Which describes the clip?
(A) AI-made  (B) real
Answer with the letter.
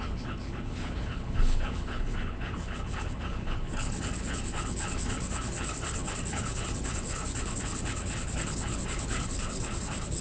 A